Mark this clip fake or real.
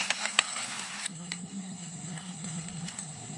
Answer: fake